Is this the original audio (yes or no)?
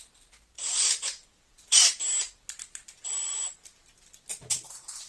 yes